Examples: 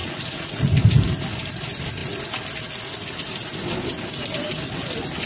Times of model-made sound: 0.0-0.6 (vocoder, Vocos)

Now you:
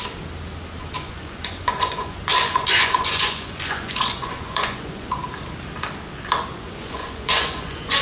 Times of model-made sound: 0.8-5.2 (vocoder, Vocos); 6.5-8.0

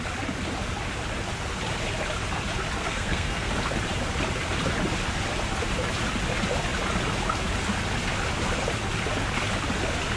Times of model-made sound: 2.8-3.5 (codec, SNAC)

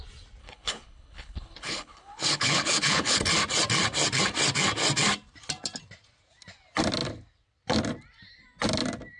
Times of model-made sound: 0.4-3.2 (codec, HILCodec)

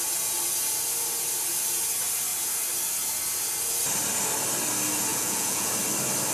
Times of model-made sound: 5.1-5.7 (vocoder, Vocos)

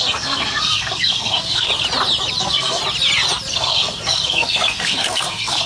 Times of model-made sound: 0.0-1.7 (codec, SNAC); 2.4-2.8; 3.5-5.7

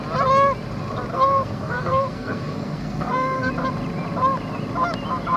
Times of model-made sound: 1.1-3.5 (codec, SNAC)